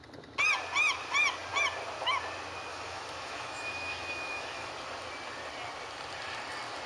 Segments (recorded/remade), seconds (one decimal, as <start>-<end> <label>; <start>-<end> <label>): 0.0-2.7 recorded; 2.7-4.7 remade; 4.7-6.9 recorded

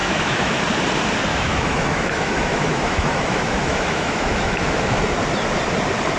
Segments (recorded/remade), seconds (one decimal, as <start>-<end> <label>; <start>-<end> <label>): 0.0-0.6 remade; 0.6-1.3 recorded; 1.3-5.0 remade; 5.0-6.2 recorded

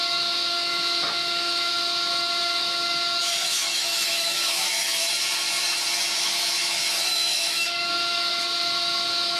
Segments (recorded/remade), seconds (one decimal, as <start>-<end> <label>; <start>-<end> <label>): 0.0-5.0 remade; 5.0-6.2 recorded; 6.2-9.4 remade

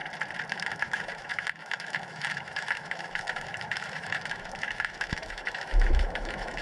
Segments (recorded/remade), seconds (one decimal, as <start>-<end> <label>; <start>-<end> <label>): 0.0-0.5 recorded; 0.5-6.6 remade

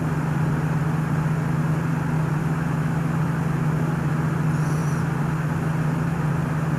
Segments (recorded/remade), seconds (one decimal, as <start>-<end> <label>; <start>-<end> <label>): 0.0-2.4 recorded; 2.4-3.2 remade; 3.2-6.8 recorded